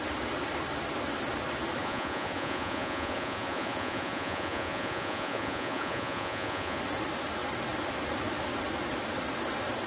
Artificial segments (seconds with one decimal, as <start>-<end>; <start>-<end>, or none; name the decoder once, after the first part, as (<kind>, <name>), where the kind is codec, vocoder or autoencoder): 1.8-6.8 (vocoder, Vocos)